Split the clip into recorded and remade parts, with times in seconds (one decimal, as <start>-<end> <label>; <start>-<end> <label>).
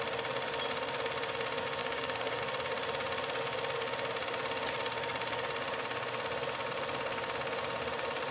0.0-1.8 recorded; 1.8-2.4 remade; 2.4-8.3 recorded